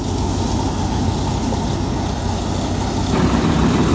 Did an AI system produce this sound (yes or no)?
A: no